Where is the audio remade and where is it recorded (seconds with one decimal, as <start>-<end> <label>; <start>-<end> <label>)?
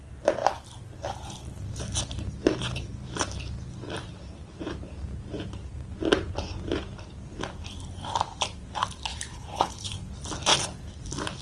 0.0-9.1 recorded; 9.1-10.1 remade; 10.1-11.4 recorded